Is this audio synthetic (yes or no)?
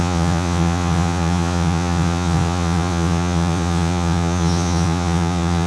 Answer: yes